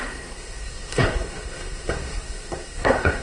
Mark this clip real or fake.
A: fake